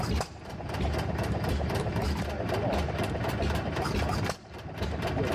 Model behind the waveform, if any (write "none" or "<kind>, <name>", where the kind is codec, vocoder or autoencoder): none